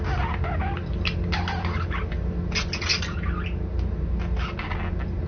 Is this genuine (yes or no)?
yes